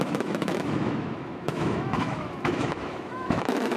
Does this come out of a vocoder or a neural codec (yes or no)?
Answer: yes